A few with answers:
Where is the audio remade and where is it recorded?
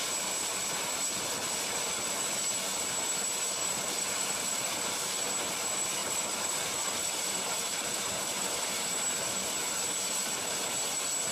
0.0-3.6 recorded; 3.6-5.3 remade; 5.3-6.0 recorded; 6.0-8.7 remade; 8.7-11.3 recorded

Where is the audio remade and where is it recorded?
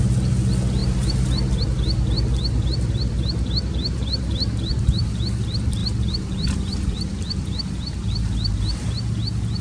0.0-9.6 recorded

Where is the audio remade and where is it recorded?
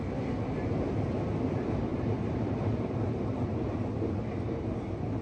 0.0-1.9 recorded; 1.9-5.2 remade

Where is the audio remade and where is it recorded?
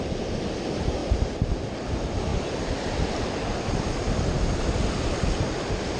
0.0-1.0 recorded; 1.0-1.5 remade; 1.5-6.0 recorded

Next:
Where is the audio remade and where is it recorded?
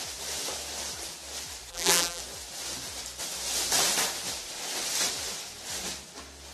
0.0-1.7 recorded; 1.7-2.2 remade; 2.2-6.5 recorded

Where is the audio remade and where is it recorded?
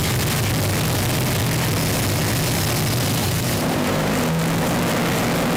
0.0-3.2 recorded; 3.2-4.2 remade; 4.2-5.6 recorded